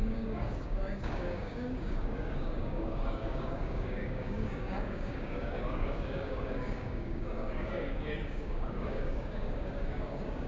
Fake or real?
fake